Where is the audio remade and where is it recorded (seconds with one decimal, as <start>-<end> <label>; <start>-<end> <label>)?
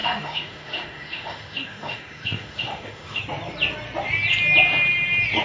0.0-3.2 remade; 3.2-5.4 recorded